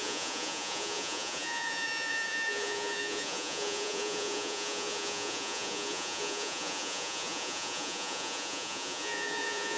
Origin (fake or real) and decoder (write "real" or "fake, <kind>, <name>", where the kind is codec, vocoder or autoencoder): fake, vocoder, Vocos